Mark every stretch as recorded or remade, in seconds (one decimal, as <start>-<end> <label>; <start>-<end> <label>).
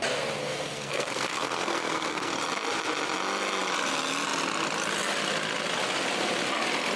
0.0-0.4 recorded; 0.4-2.3 remade; 2.3-7.0 recorded